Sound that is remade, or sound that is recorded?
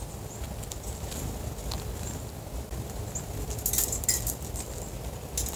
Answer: recorded